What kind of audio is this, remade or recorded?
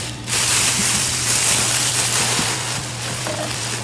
remade